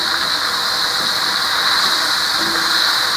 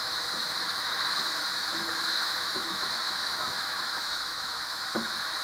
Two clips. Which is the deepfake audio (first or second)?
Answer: second